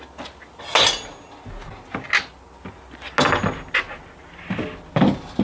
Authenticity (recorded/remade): recorded